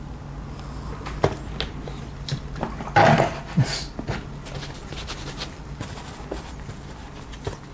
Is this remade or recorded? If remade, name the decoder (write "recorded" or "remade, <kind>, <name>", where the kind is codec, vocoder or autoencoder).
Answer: recorded